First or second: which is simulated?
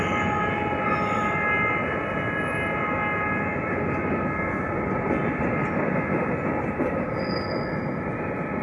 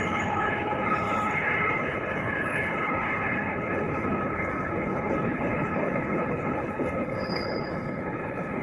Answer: second